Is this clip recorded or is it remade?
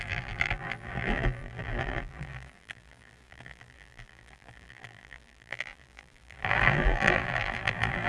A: remade